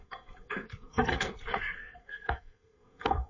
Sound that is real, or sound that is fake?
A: fake